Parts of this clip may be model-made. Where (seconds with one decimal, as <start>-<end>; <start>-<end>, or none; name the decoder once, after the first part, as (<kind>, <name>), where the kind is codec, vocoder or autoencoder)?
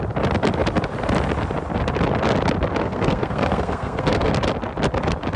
2.8-4.3 (codec, SNAC)